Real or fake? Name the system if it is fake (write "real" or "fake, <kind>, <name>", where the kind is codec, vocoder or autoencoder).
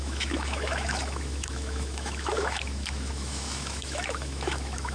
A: fake, autoencoder, DAC-VAE